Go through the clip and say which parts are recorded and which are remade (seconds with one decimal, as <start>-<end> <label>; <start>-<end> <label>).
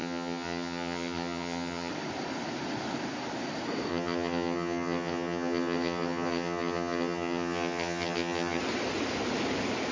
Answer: 0.0-1.9 remade; 1.9-3.9 recorded; 3.9-8.6 remade; 8.6-9.9 recorded